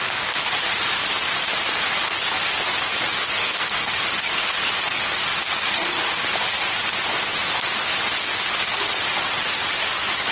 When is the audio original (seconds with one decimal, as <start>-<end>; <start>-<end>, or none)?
0.0-3.4; 3.9-10.3